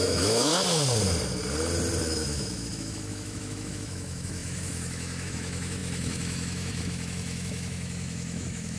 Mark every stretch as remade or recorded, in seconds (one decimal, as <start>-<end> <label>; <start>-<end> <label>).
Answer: 0.0-0.5 remade; 0.5-2.0 recorded; 2.0-8.8 remade